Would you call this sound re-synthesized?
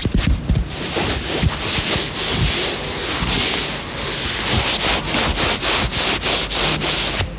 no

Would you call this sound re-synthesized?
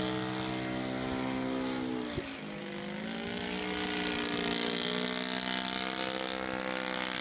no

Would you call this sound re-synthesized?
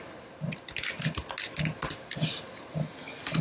no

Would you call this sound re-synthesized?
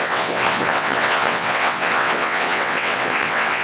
yes